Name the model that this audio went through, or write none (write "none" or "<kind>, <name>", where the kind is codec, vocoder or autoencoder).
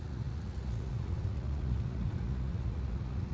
vocoder, Vocos